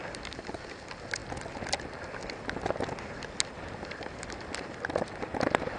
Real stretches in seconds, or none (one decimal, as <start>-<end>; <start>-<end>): 0.0-5.8